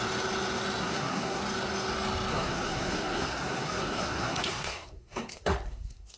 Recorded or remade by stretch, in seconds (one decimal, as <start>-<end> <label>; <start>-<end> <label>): 0.0-0.8 recorded; 0.8-1.4 remade; 1.4-2.3 recorded; 2.3-6.2 remade